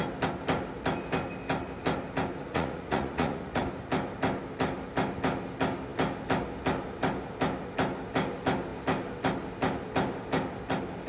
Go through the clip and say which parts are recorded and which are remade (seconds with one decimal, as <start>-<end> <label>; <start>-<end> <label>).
0.0-2.4 recorded; 2.4-3.6 remade; 3.6-11.1 recorded